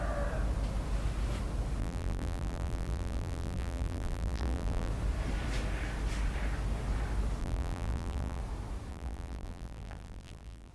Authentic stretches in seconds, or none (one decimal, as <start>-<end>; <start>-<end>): 0.0-1.8; 4.9-7.4; 8.4-8.9

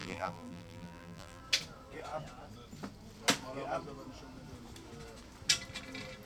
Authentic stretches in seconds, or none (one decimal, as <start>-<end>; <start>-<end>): 1.4-6.3

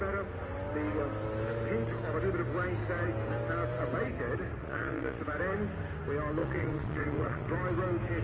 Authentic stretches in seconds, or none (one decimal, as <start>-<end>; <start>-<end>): 0.0-4.6; 5.2-6.4; 7.5-8.2

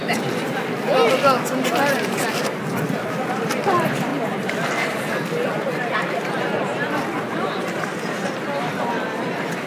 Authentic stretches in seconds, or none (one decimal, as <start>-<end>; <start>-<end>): 0.9-1.7; 7.9-9.2

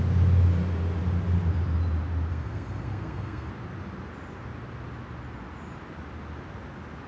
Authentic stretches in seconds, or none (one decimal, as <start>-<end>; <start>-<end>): 0.0-2.3; 3.5-7.1

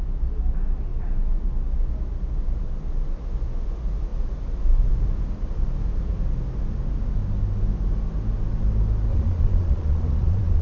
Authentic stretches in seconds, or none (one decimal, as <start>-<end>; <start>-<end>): 0.0-9.1